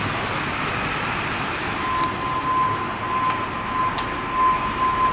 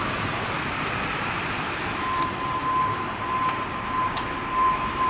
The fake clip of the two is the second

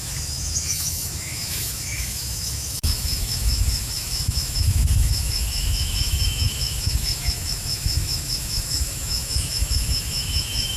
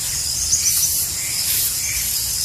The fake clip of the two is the first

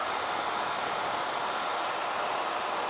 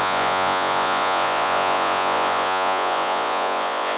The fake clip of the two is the second